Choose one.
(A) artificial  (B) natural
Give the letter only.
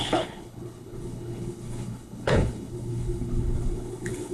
A